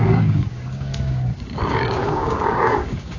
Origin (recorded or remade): remade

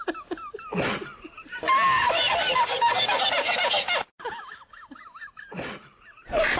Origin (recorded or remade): recorded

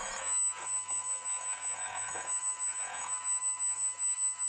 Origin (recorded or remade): remade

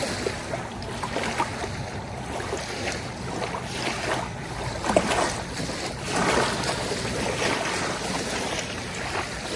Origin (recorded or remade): recorded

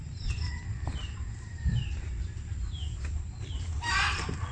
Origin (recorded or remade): recorded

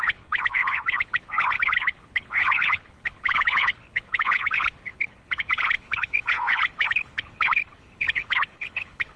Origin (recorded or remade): remade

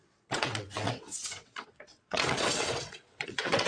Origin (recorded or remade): remade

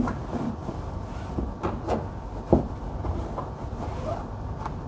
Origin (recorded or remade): recorded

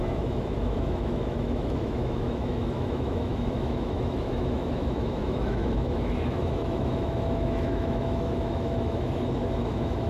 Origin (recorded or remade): remade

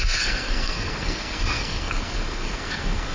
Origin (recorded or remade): remade